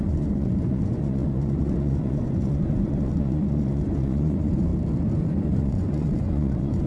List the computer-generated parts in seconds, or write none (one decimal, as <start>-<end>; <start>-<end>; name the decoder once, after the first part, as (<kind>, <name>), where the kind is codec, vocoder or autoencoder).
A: 0.0-4.7 (vocoder, Vocos); 5.4-6.9